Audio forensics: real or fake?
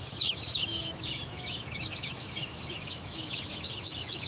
fake